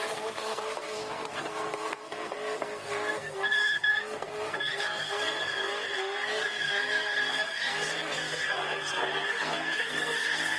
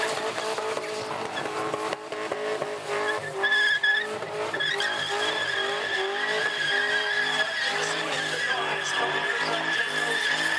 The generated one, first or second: first